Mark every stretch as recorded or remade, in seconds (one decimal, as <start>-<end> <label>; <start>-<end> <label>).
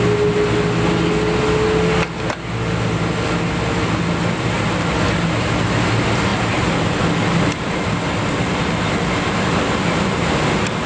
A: 0.0-10.9 recorded